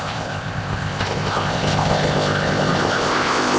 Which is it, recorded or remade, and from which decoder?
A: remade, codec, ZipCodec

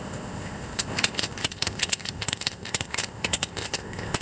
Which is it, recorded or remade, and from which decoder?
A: remade, codec, ZipCodec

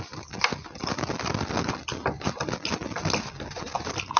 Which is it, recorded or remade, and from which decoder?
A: recorded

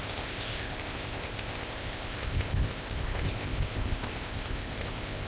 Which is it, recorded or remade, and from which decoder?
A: remade, codec, ZipCodec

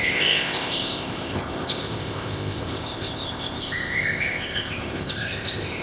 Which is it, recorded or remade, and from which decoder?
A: remade, codec, ZipCodec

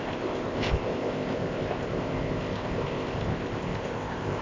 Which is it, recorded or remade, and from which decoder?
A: remade, codec, ZipCodec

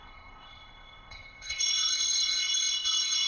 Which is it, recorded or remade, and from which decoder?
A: remade, codec, ZipCodec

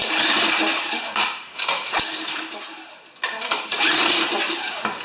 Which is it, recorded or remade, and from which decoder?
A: recorded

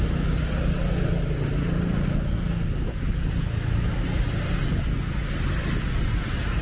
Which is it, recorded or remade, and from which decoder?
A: recorded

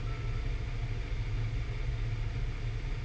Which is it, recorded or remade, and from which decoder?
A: recorded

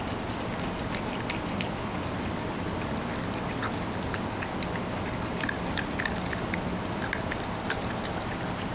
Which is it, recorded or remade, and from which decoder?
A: recorded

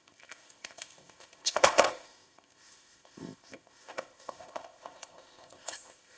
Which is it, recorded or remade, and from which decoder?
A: remade, codec, ZipCodec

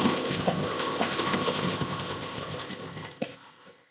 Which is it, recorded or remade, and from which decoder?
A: remade, codec, ZipCodec